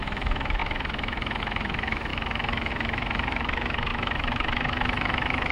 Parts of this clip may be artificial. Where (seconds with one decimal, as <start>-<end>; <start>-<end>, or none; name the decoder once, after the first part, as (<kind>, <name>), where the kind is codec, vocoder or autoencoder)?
0.0-5.5 (autoencoder, DAC-VAE)